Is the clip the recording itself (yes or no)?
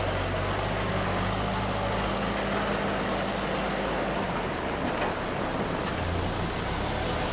yes